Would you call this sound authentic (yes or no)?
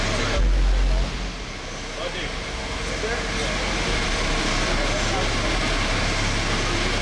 yes